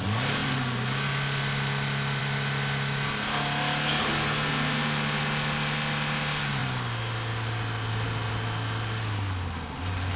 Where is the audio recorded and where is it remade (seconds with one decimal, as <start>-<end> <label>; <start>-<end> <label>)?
0.0-10.2 recorded